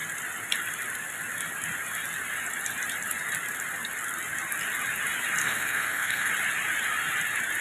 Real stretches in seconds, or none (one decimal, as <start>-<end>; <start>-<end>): 0.0-5.4; 6.3-7.6